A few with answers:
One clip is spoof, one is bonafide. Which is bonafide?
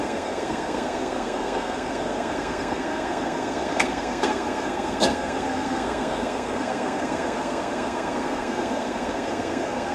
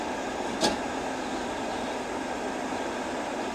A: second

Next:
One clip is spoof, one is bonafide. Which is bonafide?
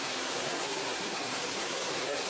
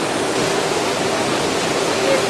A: second